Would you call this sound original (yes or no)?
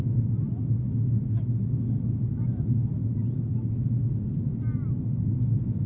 yes